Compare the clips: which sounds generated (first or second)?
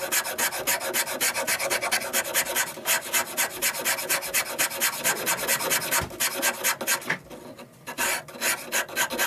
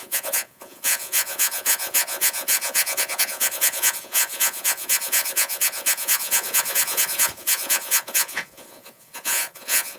second